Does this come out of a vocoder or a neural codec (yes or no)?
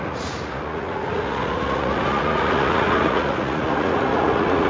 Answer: yes